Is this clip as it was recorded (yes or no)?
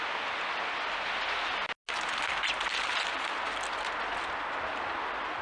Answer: yes